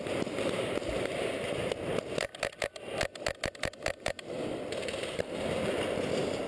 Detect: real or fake real